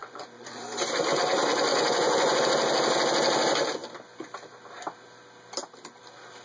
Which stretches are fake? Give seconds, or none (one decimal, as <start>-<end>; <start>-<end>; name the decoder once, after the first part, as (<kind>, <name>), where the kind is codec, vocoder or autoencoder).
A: 0.0-0.6 (vocoder, Vocos); 1.7-2.4